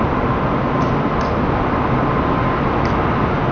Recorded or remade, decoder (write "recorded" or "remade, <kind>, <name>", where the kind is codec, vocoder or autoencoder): recorded